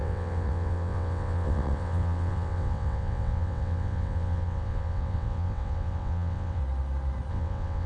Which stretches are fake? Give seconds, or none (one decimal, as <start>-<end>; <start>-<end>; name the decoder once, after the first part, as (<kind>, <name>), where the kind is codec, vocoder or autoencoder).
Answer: 0.0-6.6 (vocoder, WaveNeXt); 7.3-7.9